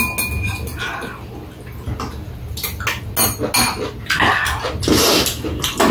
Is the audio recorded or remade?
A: recorded